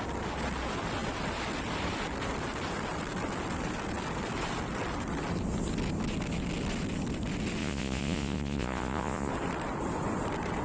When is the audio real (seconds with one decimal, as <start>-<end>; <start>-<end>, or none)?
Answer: 0.0-7.6; 9.3-10.6